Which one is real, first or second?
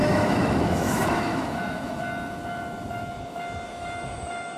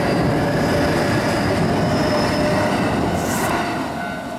second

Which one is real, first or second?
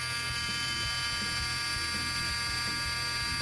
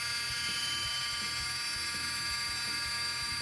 first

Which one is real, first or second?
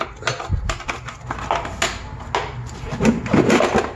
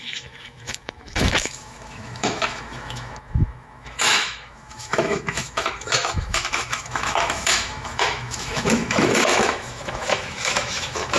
first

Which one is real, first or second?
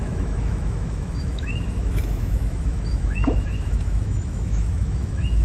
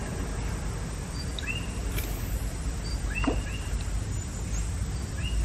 second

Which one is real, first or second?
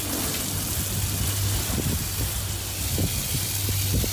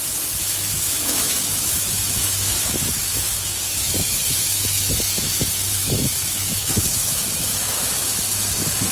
first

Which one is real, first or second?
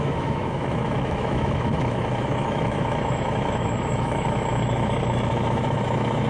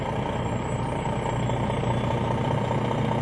second